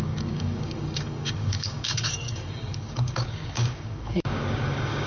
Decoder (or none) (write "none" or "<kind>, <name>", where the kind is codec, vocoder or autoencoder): codec, DAC